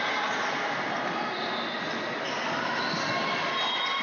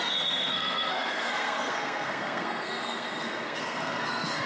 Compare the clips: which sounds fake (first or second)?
second